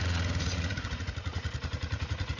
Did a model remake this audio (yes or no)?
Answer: yes